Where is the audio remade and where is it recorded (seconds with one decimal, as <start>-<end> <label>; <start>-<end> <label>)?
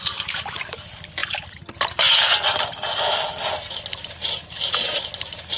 0.0-5.6 recorded